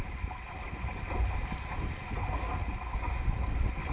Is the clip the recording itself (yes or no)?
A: yes